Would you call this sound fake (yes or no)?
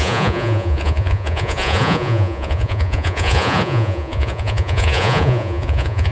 yes